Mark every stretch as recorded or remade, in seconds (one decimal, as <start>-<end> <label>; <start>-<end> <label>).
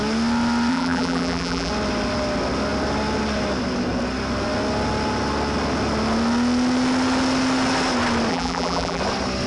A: 0.0-0.7 recorded; 0.7-1.7 remade; 1.7-8.3 recorded; 8.3-9.0 remade; 9.0-9.5 recorded